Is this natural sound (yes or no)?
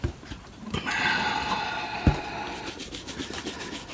yes